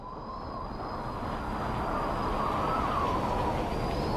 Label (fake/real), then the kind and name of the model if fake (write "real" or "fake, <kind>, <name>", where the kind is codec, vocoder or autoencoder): real